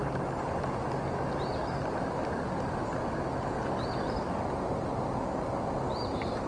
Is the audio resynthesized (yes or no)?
no